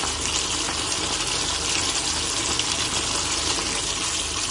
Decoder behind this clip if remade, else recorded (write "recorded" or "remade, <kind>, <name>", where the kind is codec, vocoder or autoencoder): recorded